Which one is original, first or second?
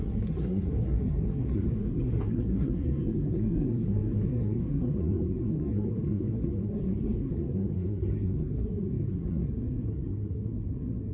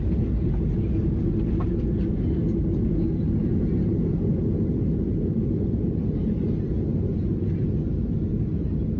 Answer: second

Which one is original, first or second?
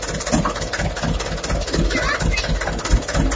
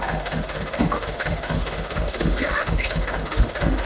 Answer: first